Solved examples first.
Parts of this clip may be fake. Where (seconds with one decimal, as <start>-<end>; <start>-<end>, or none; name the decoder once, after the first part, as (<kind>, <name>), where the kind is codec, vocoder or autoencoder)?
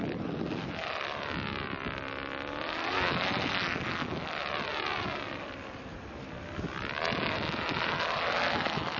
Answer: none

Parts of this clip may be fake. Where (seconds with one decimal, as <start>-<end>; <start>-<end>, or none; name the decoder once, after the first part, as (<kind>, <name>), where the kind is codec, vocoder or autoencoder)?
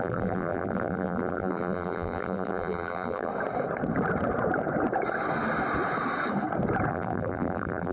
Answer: 0.0-3.3 (vocoder, BigVGAN v2); 6.9-7.9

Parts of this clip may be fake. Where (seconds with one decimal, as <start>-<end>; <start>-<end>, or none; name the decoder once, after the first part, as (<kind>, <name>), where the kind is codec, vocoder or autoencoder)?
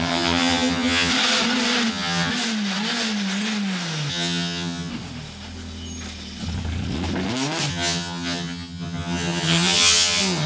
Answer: 0.0-1.1 (vocoder, HiFi-GAN); 1.9-2.3; 4.1-4.9; 7.7-10.5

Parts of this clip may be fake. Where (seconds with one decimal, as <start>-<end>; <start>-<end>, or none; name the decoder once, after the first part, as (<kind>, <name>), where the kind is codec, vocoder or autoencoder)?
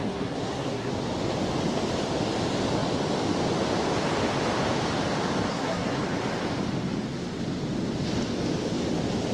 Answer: 0.0-0.9 (codec, SNAC); 5.5-6.0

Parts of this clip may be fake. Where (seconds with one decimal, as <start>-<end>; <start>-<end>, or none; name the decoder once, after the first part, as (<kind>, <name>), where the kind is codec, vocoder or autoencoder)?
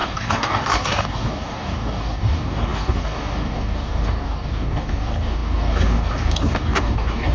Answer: 0.0-7.3 (codec, DAC)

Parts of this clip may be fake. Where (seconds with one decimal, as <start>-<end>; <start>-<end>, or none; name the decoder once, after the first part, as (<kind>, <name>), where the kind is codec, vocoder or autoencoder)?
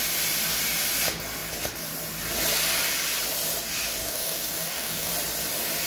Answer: 4.0-5.1 (codec, DAC)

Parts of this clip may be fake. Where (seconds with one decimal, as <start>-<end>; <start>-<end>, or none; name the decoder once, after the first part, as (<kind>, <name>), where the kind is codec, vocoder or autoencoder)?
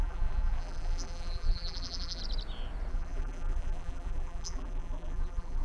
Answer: 0.0-2.2 (vocoder, BigVGAN v2); 2.9-5.6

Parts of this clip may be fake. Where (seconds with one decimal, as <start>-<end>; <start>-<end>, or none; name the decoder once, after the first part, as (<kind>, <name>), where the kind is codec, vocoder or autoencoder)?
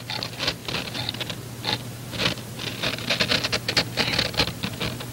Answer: none